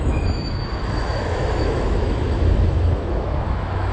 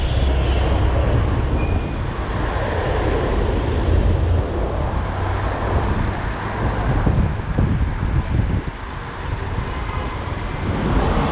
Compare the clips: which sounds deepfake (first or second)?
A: first